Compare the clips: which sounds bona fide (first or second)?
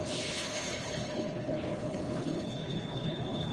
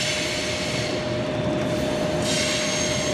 second